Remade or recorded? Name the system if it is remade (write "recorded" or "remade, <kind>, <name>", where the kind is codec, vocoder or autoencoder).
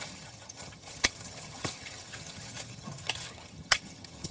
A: remade, vocoder, HiFi-GAN